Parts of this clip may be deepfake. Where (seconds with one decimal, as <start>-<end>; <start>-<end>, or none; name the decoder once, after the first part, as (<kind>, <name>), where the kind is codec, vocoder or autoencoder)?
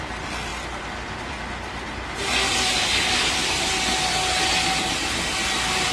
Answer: none